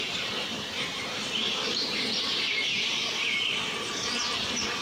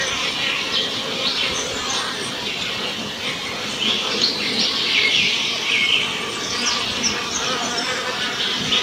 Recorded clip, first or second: second